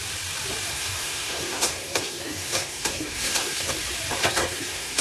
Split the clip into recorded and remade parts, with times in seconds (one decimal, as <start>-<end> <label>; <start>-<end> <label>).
0.0-0.7 recorded; 0.7-3.7 remade; 3.7-4.2 recorded; 4.2-5.0 remade